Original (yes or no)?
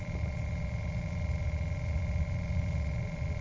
yes